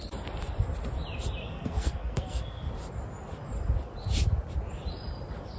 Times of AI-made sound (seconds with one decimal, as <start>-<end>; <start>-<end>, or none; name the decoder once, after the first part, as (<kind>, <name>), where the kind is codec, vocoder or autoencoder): 1.4-2.7 (codec, SNAC)